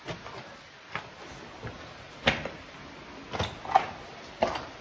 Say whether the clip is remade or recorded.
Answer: recorded